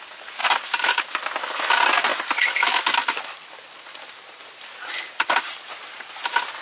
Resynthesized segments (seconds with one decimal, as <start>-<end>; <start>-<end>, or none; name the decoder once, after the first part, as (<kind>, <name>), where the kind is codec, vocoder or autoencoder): 0.4-1.7 (vocoder, BigVGAN v2); 2.1-6.1